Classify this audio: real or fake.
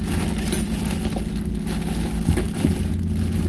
real